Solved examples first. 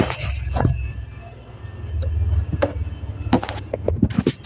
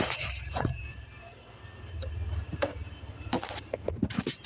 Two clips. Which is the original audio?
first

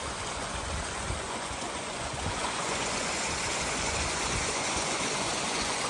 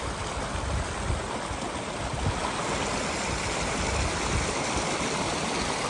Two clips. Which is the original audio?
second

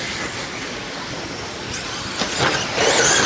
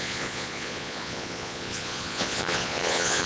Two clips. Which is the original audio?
first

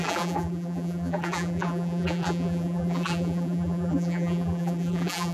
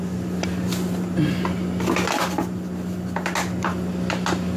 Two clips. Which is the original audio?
second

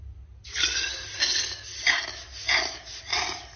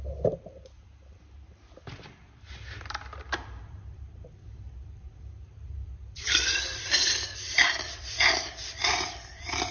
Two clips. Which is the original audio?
first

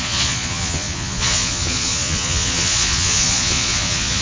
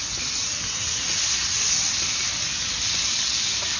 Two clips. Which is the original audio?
second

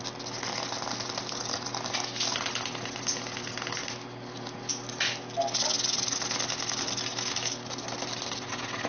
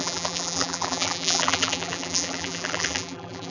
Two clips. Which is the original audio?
first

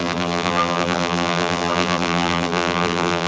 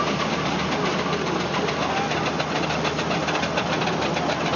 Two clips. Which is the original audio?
second